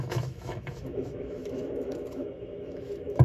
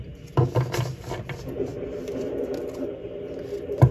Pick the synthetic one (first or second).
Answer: first